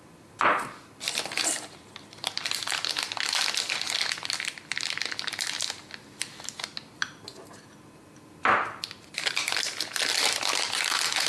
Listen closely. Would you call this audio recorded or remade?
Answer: recorded